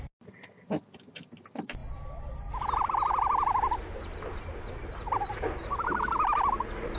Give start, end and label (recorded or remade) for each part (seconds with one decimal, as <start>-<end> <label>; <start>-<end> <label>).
0.0-7.0 recorded